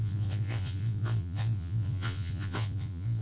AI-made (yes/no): yes